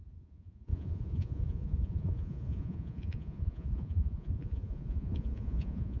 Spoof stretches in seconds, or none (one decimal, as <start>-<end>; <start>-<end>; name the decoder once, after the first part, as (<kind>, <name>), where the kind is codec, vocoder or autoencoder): 0.0-6.0 (vocoder, Vocos)